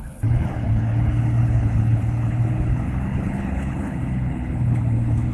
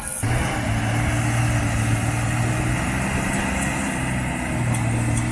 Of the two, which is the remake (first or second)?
first